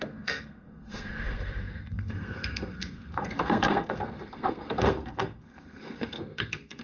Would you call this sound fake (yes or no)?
yes